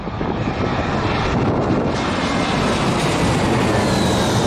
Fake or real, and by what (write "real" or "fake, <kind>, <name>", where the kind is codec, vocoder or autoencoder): real